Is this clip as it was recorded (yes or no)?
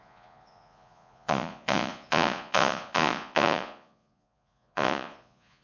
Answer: no